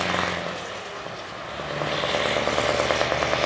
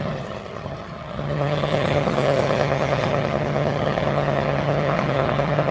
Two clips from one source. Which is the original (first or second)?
first